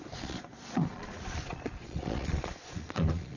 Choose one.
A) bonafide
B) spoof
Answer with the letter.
B